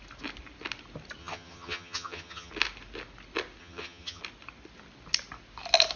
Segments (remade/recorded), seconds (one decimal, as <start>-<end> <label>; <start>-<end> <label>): 0.0-1.2 recorded; 1.2-2.5 remade; 2.5-3.6 recorded; 3.6-4.2 remade; 4.2-6.0 recorded